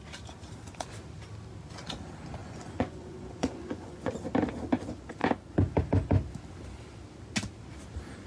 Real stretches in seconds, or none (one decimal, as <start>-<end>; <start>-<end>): 0.0-2.4; 4.1-8.3